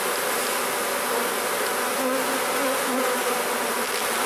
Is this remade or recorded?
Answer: recorded